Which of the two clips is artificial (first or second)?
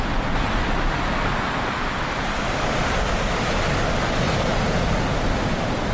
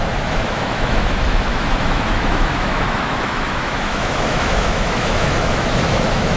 second